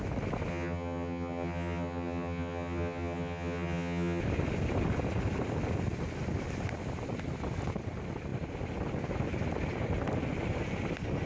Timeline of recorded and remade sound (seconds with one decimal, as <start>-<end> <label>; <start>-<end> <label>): 0.0-0.5 recorded; 0.5-4.2 remade; 4.2-11.3 recorded